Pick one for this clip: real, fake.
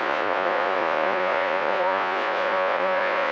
fake